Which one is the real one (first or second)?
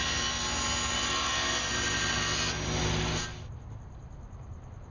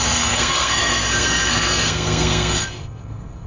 first